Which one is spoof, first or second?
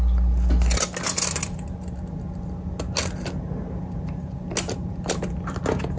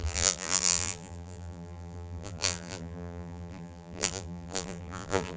second